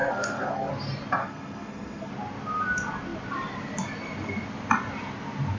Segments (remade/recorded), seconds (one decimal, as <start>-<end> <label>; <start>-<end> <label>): 0.0-0.7 remade; 0.7-1.2 recorded; 1.2-2.1 remade; 2.1-5.6 recorded